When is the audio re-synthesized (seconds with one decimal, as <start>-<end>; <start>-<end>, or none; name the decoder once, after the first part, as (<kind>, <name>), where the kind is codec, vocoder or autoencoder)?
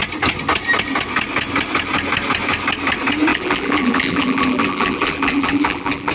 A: 3.3-6.1 (vocoder, BigVGAN v2)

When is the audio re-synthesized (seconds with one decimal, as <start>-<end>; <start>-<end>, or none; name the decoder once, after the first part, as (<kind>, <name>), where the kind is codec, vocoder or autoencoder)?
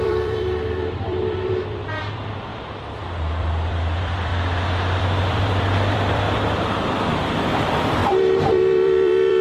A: 0.0-2.5 (vocoder, BigVGAN v2); 3.4-4.3; 5.0-9.4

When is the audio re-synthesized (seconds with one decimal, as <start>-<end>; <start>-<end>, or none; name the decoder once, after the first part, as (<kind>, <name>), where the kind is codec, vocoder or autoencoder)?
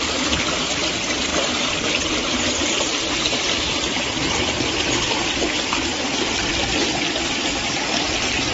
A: 0.0-8.5 (vocoder, BigVGAN v2)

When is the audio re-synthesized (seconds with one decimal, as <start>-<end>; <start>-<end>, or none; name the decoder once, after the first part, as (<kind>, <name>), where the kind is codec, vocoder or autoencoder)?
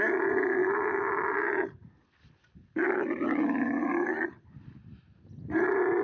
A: none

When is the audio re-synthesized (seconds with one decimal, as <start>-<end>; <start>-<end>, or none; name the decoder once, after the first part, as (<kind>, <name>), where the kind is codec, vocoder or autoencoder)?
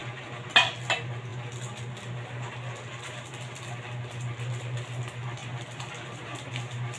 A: 5.4-6.5 (vocoder, BigVGAN v2)